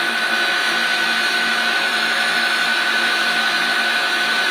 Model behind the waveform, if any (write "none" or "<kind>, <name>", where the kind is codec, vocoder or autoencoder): autoencoder, DAC-VAE